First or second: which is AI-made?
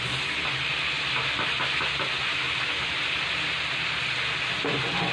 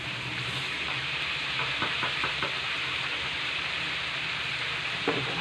second